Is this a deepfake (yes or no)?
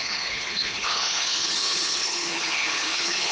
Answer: yes